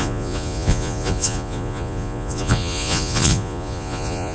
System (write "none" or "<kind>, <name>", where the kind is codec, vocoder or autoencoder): vocoder, Vocos